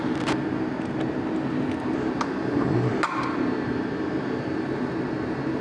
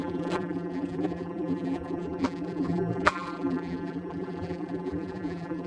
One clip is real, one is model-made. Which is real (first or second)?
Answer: first